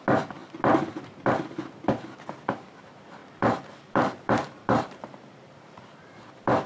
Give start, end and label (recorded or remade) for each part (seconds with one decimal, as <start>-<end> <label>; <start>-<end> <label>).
0.0-3.2 recorded; 3.2-6.2 remade; 6.2-6.7 recorded

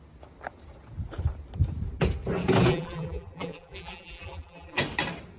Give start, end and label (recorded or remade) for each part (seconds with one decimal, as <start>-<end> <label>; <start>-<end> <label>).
0.0-2.7 recorded; 2.7-4.8 remade; 4.8-5.4 recorded

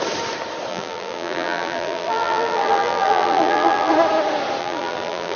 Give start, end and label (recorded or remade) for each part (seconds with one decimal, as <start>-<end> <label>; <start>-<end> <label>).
0.0-0.7 recorded; 0.7-3.9 remade; 3.9-4.6 recorded; 4.6-5.4 remade

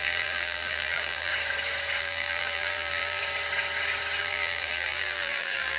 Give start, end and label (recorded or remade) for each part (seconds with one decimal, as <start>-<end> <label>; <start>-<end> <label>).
0.0-1.3 remade; 1.3-2.0 recorded; 2.0-3.2 remade; 3.2-4.2 recorded; 4.2-5.8 remade

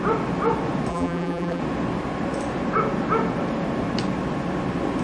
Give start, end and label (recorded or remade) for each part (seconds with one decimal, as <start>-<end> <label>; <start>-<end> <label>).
0.0-0.9 recorded; 0.9-1.6 remade; 1.6-5.0 recorded

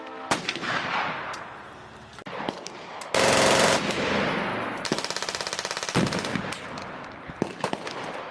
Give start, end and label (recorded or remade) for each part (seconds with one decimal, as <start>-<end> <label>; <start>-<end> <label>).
0.0-8.3 recorded

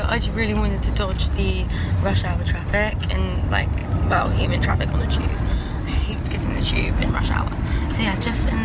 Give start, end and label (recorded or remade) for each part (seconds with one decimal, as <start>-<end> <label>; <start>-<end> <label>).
0.0-8.6 recorded

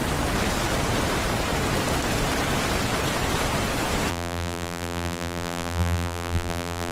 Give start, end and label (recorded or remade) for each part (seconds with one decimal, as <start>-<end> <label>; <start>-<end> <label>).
0.0-4.1 recorded; 4.1-6.9 remade